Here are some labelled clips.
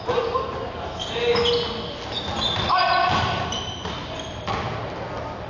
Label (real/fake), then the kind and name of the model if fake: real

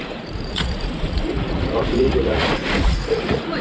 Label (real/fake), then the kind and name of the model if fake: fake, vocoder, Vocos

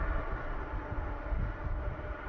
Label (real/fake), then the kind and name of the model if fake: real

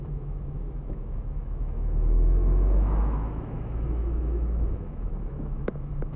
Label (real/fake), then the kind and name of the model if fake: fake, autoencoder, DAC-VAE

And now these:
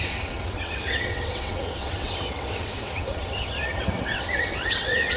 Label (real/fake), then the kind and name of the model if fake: fake, vocoder, WaveNeXt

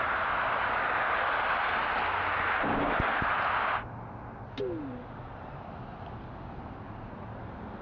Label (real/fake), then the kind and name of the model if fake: real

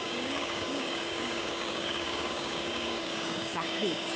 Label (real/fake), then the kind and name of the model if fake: fake, codec, DAC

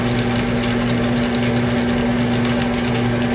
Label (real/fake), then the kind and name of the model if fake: real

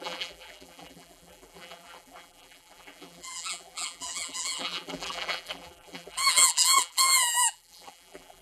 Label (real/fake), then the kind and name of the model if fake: fake, vocoder, BigVGAN v2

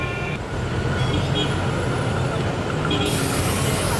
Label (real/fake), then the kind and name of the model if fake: real